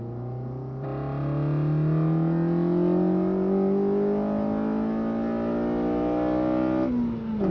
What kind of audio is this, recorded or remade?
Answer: recorded